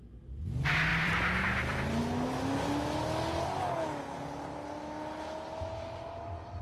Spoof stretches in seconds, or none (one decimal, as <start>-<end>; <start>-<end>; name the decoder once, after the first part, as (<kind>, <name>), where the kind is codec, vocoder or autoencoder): 0.9-2.0 (vocoder, BigVGAN v2)